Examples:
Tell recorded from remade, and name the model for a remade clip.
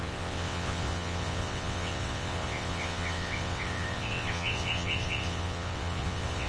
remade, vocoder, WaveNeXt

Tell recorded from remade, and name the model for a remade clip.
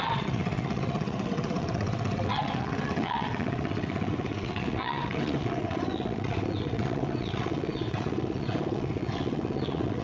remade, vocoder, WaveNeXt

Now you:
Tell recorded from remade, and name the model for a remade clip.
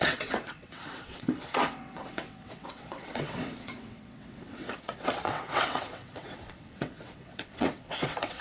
remade, vocoder, WaveNeXt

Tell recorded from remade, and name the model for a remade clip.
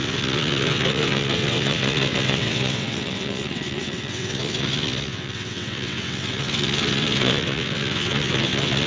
remade, vocoder, WaveNeXt